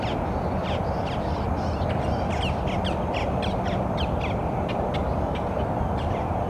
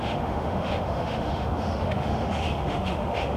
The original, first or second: first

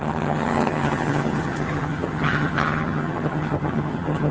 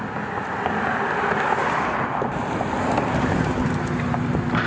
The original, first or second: second